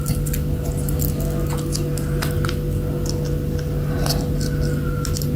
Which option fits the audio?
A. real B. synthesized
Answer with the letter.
A